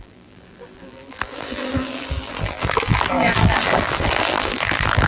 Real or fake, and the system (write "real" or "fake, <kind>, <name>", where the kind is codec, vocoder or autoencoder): fake, vocoder, BigVGAN v2